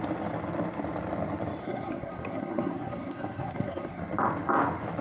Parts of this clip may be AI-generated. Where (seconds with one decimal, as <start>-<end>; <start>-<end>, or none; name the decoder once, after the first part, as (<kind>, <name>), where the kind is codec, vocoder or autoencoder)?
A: 1.6-4.0 (codec, SNAC)